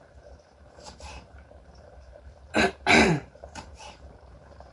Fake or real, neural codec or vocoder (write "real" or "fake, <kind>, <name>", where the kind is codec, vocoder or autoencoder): fake, vocoder, BigVGAN v2